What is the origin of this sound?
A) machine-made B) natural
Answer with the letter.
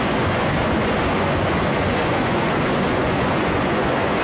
A